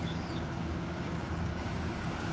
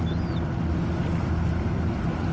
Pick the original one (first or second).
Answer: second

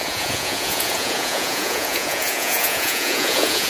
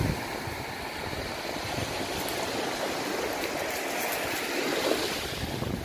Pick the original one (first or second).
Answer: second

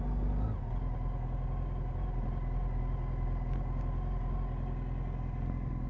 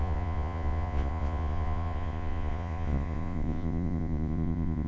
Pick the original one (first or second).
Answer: first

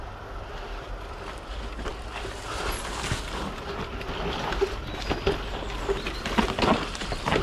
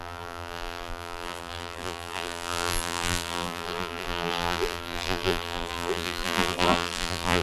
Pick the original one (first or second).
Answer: first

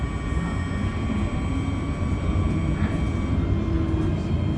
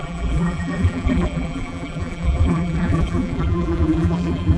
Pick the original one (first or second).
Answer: first